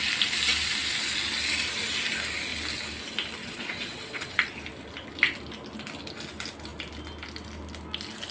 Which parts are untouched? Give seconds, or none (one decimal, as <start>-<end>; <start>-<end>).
0.0-3.4; 4.4-8.3

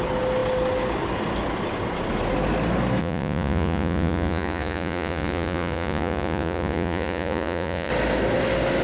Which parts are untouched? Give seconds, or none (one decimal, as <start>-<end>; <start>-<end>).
0.0-3.0; 7.9-8.8

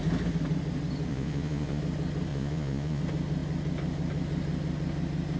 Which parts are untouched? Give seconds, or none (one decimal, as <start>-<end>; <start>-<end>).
0.0-1.1; 1.8-2.3; 3.0-5.4

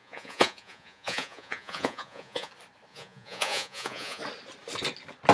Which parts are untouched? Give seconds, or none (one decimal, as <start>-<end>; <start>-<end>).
2.5-2.9; 4.2-5.3

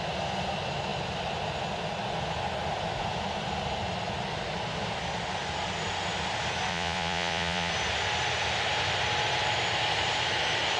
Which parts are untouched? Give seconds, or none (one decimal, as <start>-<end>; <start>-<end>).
0.0-6.7; 7.7-10.8

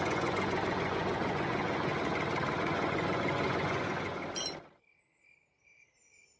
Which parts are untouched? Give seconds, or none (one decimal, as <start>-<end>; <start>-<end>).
1.9-2.6; 4.2-6.4

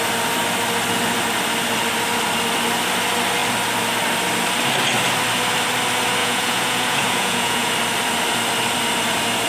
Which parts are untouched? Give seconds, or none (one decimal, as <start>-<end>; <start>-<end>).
0.0-6.2; 7.7-9.5